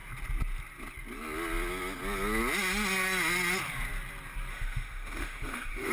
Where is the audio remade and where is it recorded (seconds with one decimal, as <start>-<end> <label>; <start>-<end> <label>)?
0.0-4.5 recorded; 4.5-5.9 remade